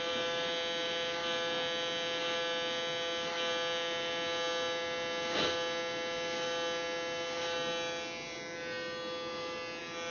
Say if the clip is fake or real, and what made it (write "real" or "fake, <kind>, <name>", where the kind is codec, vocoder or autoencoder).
real